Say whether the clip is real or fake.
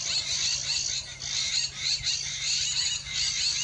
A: real